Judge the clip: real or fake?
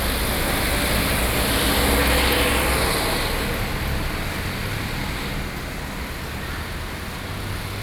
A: real